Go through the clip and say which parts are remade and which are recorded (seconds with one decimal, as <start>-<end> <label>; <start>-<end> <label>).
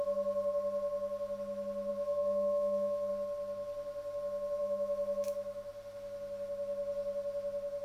0.0-1.9 recorded; 1.9-3.1 remade; 3.1-4.6 recorded; 4.6-5.7 remade; 5.7-7.8 recorded